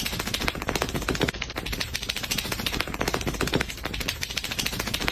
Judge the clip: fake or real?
fake